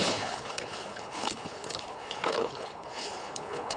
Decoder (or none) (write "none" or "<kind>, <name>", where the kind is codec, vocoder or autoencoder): codec, HILCodec